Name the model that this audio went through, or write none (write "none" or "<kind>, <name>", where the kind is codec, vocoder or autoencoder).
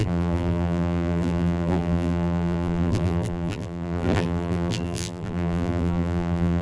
vocoder, BigVGAN v2